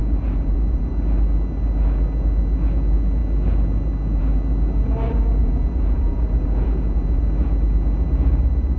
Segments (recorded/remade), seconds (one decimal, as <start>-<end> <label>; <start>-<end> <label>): 0.0-0.9 remade; 0.9-5.4 recorded; 5.4-7.2 remade; 7.2-8.8 recorded